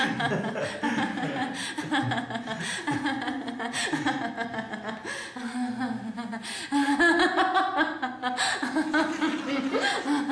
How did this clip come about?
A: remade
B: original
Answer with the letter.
B